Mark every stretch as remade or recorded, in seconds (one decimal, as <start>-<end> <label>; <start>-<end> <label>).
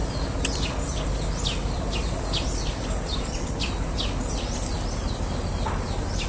0.0-6.3 recorded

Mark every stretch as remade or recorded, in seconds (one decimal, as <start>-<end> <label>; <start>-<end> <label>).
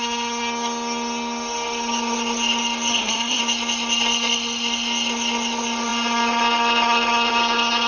0.0-2.9 recorded; 2.9-3.4 remade; 3.4-7.9 recorded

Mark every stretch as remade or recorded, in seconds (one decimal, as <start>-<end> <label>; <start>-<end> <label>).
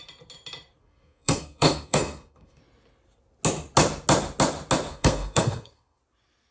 0.0-0.8 recorded; 0.8-2.6 remade; 2.6-4.9 recorded; 4.9-6.0 remade; 6.0-6.5 recorded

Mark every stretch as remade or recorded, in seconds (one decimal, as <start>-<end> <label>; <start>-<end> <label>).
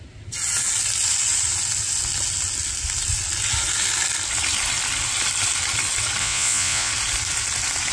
0.0-6.2 recorded; 6.2-6.9 remade; 6.9-7.9 recorded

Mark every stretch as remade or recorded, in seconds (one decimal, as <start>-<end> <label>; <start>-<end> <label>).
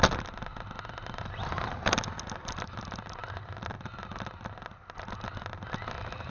0.0-6.3 recorded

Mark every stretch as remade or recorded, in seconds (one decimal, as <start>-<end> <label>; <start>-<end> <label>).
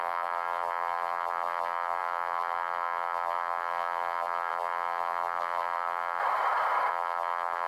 0.0-6.2 remade; 6.2-6.9 recorded; 6.9-7.7 remade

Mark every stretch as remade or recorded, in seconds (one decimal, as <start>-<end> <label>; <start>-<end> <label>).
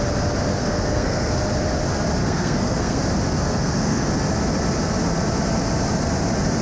0.0-0.5 recorded; 0.5-1.3 remade; 1.3-2.2 recorded; 2.2-3.0 remade; 3.0-3.4 recorded; 3.4-4.1 remade; 4.1-6.6 recorded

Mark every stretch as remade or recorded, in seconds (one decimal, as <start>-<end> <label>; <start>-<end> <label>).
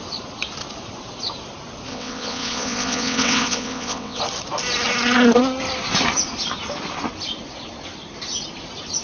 0.0-1.9 recorded; 1.9-4.2 remade; 4.2-9.0 recorded